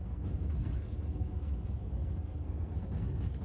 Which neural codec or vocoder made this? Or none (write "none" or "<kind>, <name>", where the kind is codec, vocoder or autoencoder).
codec, SNAC